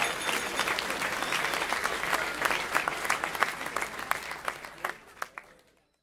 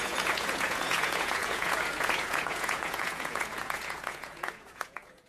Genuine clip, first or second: first